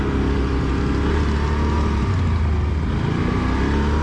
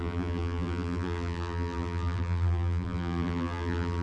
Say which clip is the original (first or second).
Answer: first